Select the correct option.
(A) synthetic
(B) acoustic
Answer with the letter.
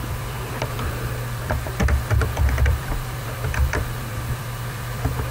A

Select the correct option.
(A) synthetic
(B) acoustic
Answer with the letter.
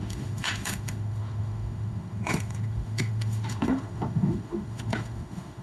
A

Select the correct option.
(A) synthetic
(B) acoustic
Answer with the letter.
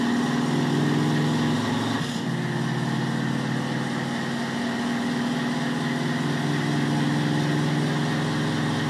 B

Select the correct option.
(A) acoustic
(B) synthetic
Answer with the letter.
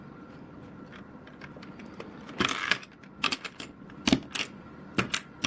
A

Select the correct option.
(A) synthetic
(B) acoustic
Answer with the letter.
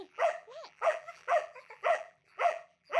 A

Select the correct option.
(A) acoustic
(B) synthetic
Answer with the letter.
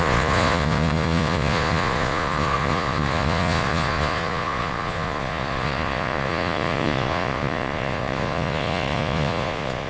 B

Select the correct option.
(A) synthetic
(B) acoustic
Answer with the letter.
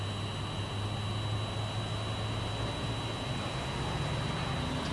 B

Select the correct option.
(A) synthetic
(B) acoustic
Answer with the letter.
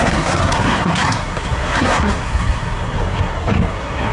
A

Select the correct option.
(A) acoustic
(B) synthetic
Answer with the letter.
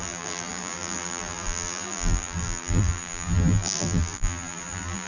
B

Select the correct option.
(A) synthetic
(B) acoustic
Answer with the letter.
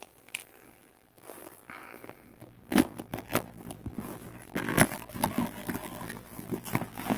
A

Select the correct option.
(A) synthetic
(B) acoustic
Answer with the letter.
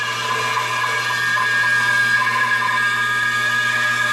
B